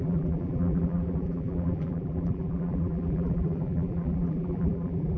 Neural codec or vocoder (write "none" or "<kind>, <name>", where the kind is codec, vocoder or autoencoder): vocoder, BigVGAN v2